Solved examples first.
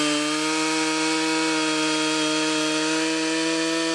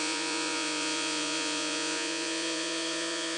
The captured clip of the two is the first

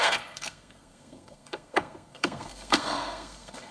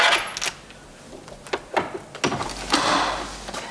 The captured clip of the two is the second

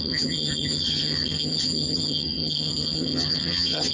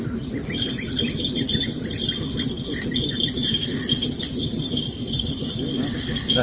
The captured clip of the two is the second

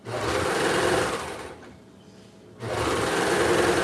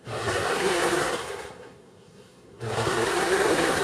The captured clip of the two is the first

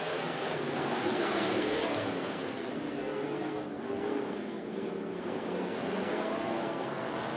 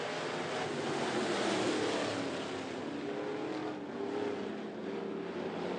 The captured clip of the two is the second